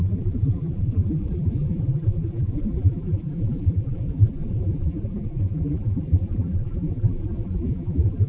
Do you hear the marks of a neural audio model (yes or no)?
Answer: yes